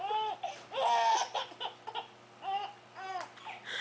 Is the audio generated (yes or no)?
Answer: no